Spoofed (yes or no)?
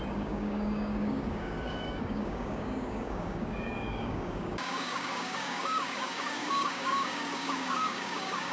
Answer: yes